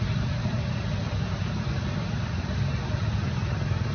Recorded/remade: recorded